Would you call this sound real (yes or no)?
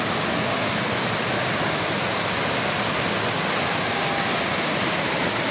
yes